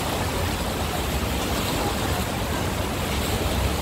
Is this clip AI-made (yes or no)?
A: no